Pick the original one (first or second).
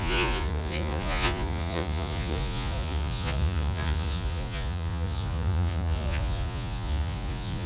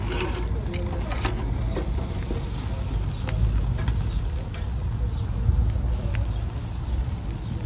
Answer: second